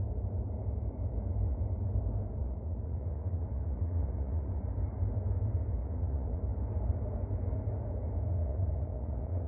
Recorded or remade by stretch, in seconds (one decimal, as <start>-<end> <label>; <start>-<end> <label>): 0.0-2.4 recorded; 2.4-4.5 remade; 4.5-5.8 recorded; 5.8-6.4 remade; 6.4-8.3 recorded; 8.3-9.5 remade